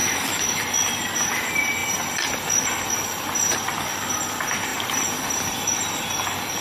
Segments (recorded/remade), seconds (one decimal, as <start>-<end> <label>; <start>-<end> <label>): 0.0-0.6 remade; 0.6-6.6 recorded